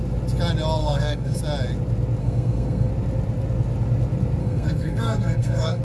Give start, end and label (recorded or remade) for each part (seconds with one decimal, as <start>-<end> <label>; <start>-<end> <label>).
0.0-0.8 recorded; 0.8-1.4 remade; 1.4-2.2 recorded; 2.2-2.9 remade; 2.9-4.4 recorded; 4.4-5.8 remade